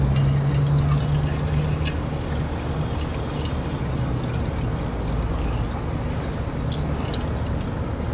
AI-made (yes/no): no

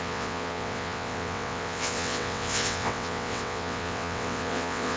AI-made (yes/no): yes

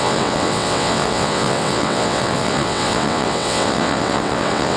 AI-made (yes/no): yes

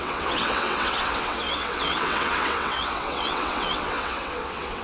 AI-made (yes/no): yes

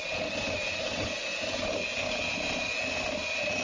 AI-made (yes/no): no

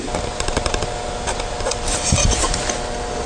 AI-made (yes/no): no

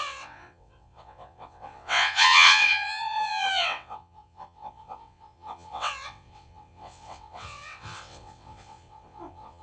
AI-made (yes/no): yes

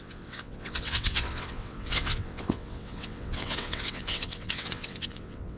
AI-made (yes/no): yes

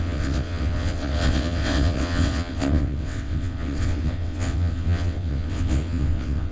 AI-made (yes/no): yes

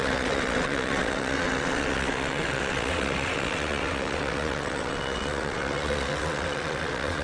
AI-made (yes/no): yes